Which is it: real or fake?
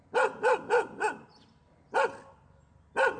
real